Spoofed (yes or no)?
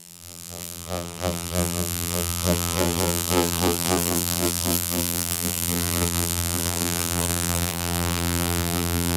yes